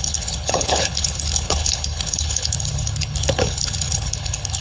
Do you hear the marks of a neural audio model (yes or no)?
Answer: yes